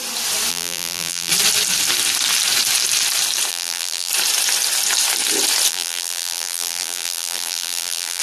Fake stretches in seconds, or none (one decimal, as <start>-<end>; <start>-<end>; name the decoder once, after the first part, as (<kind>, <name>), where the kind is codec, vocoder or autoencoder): 0.5-1.3 (vocoder, BigVGAN v2); 3.5-4.1; 5.7-8.2

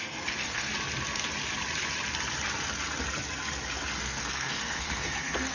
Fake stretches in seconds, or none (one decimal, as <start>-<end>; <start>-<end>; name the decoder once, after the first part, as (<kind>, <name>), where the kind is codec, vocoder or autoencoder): 0.0-0.7 (codec, SNAC); 4.0-5.5

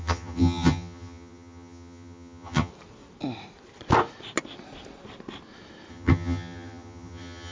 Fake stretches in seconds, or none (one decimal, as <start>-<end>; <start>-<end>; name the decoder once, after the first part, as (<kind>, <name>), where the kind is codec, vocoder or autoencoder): 0.0-2.7 (vocoder, HiFi-GAN); 5.9-7.5

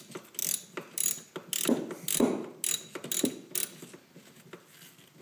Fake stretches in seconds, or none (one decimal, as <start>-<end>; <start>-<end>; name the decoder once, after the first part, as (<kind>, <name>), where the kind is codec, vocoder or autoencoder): none

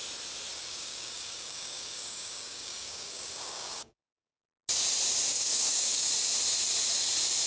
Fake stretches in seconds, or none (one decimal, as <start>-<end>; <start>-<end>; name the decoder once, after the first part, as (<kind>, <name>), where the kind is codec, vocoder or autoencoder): 0.5-4.4 (codec, DAC); 5.3-6.1